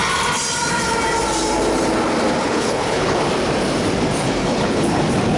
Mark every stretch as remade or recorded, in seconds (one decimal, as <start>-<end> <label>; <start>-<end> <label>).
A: 0.0-2.4 recorded; 2.4-3.3 remade; 3.3-4.4 recorded; 4.4-5.0 remade; 5.0-5.4 recorded